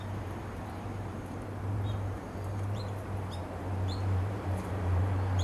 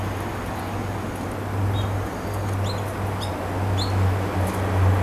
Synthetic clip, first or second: first